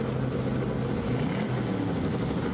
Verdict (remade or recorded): recorded